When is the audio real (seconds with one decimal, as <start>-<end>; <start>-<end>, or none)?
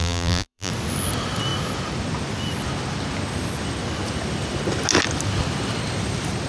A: 0.7-6.5